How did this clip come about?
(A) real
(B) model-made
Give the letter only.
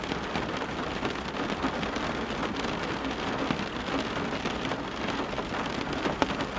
A